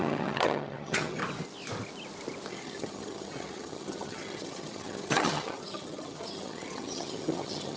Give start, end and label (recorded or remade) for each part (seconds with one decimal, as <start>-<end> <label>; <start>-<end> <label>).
0.0-1.2 remade; 1.2-2.5 recorded; 2.5-7.8 remade